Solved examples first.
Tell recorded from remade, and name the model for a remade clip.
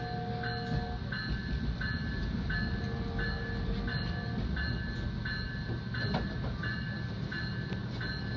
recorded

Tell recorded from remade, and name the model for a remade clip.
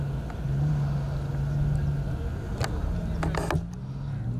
recorded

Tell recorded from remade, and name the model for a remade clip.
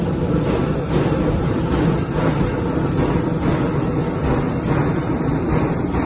recorded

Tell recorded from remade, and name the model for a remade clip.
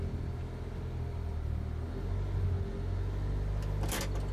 recorded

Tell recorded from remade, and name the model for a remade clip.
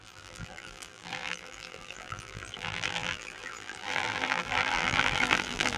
remade, vocoder, BigVGAN v2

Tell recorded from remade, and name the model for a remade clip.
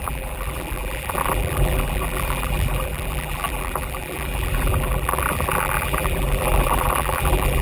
remade, vocoder, BigVGAN v2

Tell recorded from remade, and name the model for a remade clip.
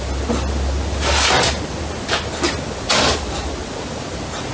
recorded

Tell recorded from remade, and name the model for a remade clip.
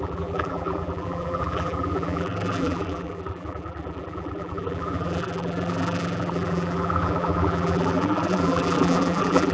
remade, vocoder, BigVGAN v2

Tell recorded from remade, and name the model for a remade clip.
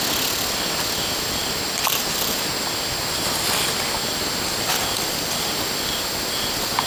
recorded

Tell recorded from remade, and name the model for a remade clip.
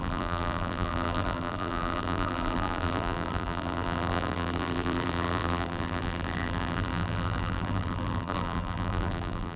remade, vocoder, BigVGAN v2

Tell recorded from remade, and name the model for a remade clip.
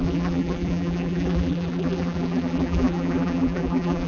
remade, vocoder, BigVGAN v2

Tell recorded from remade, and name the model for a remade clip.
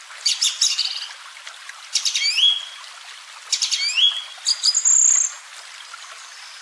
recorded